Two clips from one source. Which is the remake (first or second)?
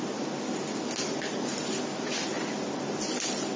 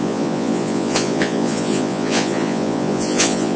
second